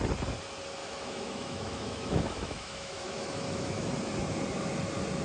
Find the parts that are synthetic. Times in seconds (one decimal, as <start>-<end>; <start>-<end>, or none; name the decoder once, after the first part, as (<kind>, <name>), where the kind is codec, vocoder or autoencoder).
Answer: 0.8-3.9 (autoencoder, DAC-VAE)